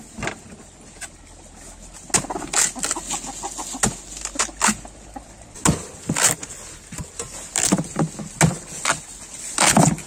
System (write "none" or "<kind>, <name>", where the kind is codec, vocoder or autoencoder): none